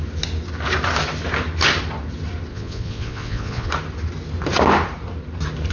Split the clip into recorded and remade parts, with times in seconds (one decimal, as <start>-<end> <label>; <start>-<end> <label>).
0.0-2.5 recorded; 2.5-3.7 remade; 3.7-5.7 recorded